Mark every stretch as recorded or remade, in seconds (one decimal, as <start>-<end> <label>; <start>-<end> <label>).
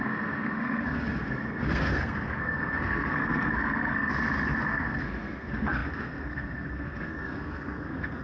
0.0-4.1 remade; 4.1-4.7 recorded; 4.7-8.2 remade